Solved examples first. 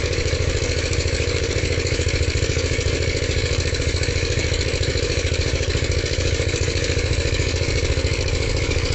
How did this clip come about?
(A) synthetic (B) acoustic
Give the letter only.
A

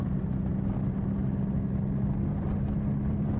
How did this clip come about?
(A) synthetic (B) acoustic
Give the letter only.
B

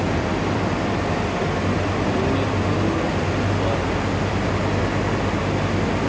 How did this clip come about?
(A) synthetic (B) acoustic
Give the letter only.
B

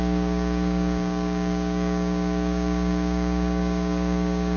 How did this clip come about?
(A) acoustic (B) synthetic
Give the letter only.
B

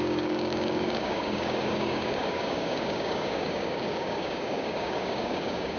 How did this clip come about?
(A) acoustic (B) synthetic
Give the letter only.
B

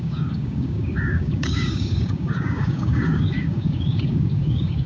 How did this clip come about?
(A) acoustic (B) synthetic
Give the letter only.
B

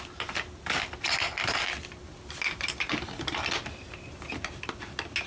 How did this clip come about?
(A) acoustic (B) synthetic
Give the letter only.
A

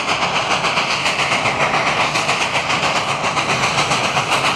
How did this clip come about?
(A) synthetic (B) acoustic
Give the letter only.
B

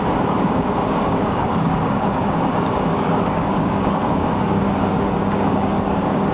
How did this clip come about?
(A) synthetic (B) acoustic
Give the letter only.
A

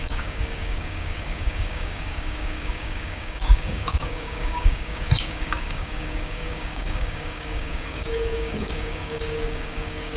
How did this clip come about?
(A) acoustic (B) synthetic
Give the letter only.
B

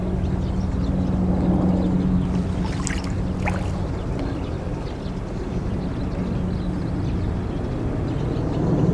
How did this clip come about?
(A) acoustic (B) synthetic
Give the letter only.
A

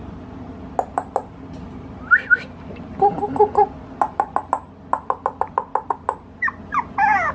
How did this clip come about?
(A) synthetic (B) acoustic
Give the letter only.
B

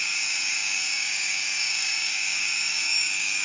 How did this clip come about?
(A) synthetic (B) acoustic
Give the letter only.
A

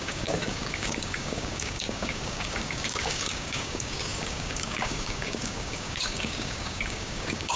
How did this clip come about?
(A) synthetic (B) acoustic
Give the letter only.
A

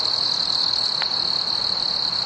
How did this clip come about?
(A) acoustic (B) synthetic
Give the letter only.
A